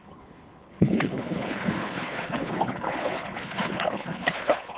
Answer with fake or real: fake